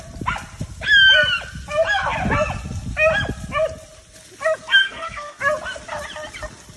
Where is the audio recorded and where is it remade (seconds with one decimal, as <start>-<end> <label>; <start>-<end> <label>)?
0.0-4.8 recorded; 4.8-5.4 remade; 5.4-6.8 recorded